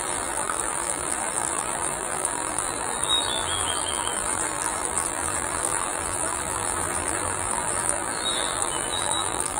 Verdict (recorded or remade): remade